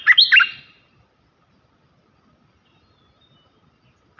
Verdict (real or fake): real